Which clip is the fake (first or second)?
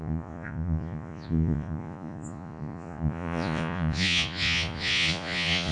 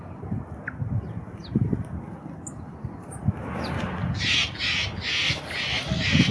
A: first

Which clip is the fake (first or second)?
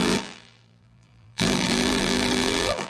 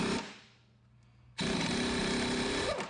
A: first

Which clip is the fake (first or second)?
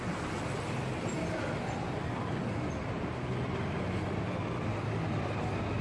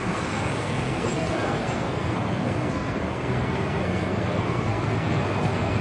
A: second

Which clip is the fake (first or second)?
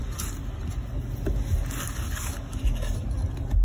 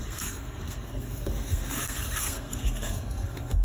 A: second